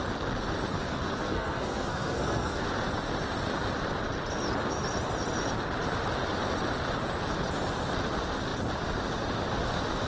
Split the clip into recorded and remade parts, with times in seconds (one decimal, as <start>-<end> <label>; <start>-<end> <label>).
0.0-0.7 recorded; 0.7-2.7 remade; 2.7-10.1 recorded